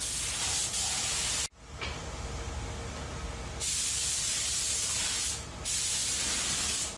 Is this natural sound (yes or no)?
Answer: yes